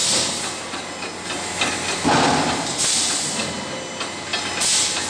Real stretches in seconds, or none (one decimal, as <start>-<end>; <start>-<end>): 0.0-5.1